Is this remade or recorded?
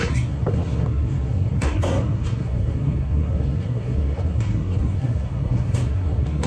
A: remade